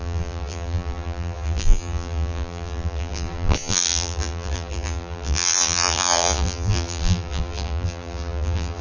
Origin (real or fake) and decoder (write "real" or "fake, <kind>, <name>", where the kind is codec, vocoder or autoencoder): fake, vocoder, BigVGAN v2